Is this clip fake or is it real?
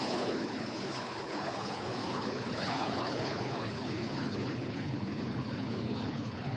fake